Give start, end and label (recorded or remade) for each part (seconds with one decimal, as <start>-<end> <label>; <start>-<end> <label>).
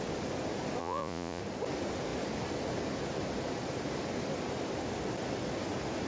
0.0-0.8 recorded; 0.8-1.4 remade; 1.4-6.1 recorded